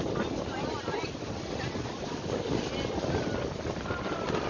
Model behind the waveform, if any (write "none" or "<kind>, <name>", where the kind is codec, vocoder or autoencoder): none